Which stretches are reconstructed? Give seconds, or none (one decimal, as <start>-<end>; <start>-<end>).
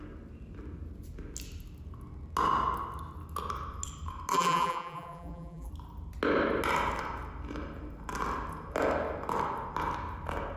4.3-5.7